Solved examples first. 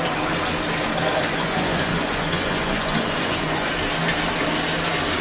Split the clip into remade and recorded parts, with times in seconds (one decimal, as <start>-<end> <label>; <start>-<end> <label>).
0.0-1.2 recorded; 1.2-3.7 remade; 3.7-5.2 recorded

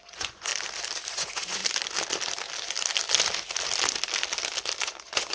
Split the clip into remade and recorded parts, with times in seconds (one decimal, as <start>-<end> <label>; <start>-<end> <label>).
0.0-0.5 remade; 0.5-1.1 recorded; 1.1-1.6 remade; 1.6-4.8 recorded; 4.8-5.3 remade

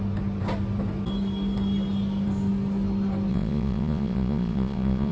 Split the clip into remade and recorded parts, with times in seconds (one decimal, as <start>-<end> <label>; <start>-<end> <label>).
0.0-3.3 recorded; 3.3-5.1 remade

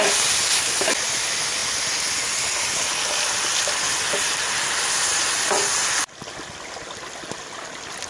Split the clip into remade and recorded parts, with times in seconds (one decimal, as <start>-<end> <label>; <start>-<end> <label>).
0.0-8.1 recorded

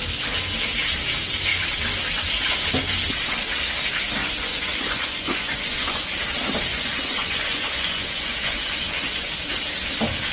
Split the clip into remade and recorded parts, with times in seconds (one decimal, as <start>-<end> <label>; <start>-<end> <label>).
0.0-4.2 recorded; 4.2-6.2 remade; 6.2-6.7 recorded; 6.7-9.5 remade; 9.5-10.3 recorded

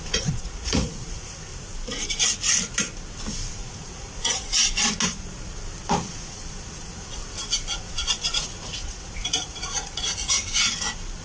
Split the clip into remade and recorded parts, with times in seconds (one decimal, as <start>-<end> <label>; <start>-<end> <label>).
0.0-1.5 remade; 1.5-3.5 recorded; 3.5-4.5 remade; 4.5-6.1 recorded; 6.1-7.2 remade; 7.2-7.7 recorded; 7.7-10.4 remade; 10.4-11.2 recorded

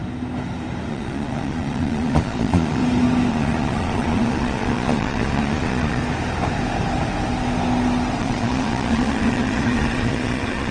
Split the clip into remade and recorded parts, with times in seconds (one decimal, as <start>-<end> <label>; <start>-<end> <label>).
0.0-0.9 recorded; 0.9-2.8 remade; 2.8-3.3 recorded; 3.3-6.0 remade; 6.0-8.2 recorded; 8.2-10.7 remade

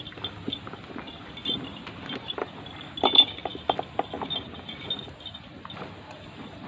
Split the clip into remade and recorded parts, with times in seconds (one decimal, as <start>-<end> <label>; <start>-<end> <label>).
0.0-6.7 recorded